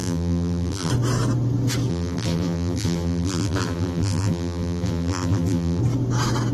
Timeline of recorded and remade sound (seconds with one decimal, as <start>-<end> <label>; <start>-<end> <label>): 0.0-0.9 remade; 0.9-1.9 recorded; 1.9-5.8 remade; 5.8-6.5 recorded